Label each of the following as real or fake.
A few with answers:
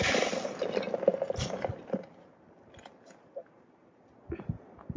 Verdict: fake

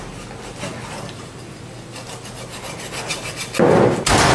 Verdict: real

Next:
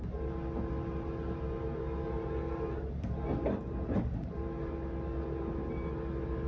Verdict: real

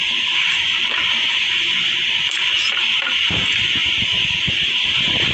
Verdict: fake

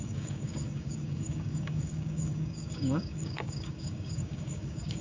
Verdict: fake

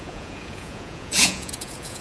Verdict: fake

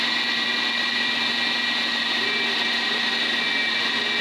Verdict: real